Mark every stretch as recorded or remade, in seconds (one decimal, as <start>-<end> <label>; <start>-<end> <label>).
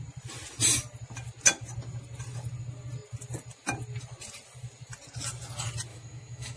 0.0-5.9 recorded; 5.9-6.6 remade